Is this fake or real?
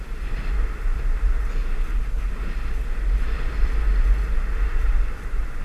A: real